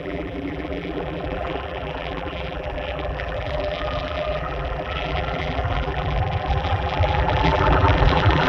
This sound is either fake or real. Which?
fake